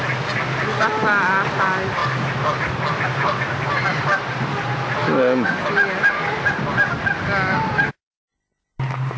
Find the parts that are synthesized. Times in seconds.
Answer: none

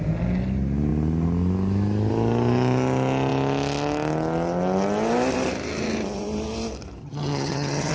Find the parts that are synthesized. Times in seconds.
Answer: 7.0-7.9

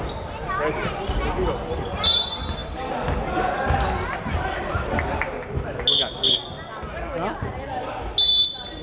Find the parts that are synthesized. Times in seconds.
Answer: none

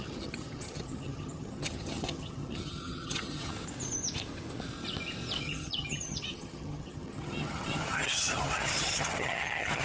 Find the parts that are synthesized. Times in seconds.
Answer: 0.0-3.5; 5.4-9.8

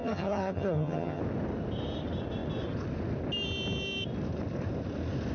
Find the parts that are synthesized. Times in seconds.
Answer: 0.0-1.2

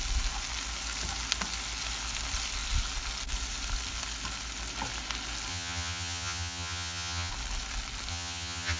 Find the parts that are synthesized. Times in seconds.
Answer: 5.5-7.3; 8.1-8.8

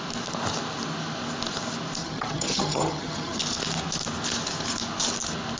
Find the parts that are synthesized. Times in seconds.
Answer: 2.0-3.4